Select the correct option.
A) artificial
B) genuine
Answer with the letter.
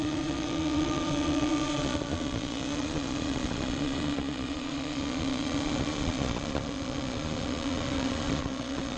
A